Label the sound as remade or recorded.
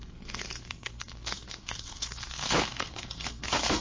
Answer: remade